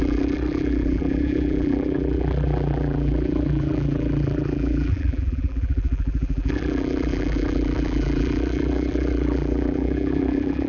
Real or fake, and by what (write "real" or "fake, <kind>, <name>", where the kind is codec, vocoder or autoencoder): fake, vocoder, BigVGAN v2